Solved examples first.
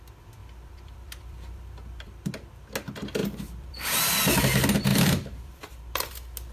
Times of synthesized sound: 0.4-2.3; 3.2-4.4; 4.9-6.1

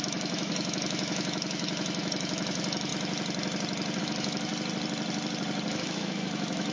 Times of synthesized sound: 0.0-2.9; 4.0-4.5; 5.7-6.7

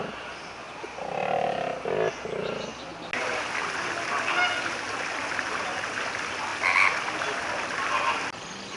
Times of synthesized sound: none

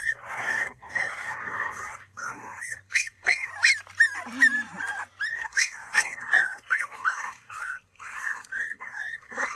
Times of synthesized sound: 0.0-3.5; 5.3-9.6